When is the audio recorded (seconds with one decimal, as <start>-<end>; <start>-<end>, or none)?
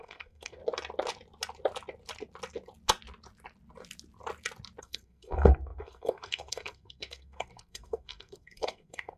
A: 0.6-4.8